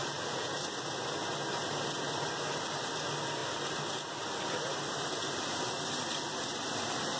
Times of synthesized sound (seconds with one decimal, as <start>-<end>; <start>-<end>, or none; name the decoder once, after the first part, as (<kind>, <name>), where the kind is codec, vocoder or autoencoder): 0.0-0.8 (vocoder, BigVGAN v2); 3.4-4.1

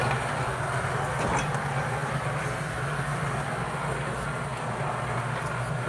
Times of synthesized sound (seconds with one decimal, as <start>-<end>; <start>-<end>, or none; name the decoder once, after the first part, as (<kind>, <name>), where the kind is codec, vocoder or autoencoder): none

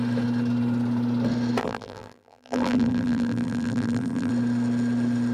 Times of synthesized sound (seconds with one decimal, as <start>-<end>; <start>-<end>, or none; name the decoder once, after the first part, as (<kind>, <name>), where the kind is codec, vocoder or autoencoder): 1.6-4.3 (vocoder, BigVGAN v2)

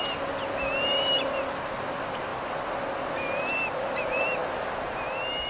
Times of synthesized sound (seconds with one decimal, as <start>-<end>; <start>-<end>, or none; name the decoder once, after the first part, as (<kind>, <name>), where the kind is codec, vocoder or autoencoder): none

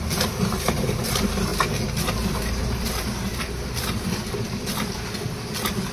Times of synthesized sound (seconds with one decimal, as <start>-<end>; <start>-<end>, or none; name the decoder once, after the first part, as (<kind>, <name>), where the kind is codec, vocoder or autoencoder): 0.0-1.5 (vocoder, BigVGAN v2); 2.1-3.3

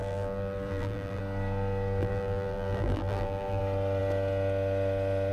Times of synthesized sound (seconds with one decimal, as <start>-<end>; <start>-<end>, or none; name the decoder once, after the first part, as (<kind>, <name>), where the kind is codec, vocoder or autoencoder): 0.0-1.2 (vocoder, BigVGAN v2); 2.0-3.6